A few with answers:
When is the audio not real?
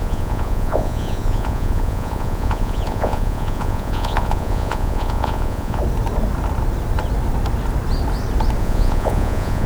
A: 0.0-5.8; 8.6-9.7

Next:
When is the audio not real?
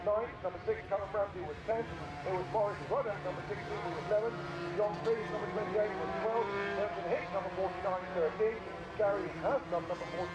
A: 0.4-2.5; 5.2-7.3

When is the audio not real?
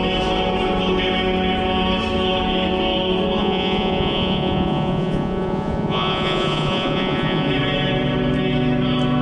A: 3.4-7.5